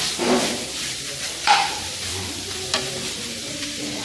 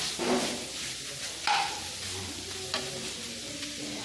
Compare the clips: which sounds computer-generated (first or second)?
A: first